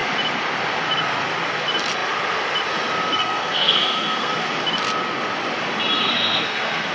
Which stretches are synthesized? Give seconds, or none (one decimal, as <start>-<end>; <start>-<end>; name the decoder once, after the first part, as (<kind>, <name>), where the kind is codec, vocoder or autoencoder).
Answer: 3.2-4.3 (codec, SNAC); 6.0-6.9